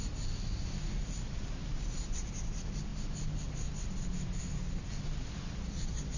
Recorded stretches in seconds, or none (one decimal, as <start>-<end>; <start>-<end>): 0.0-6.2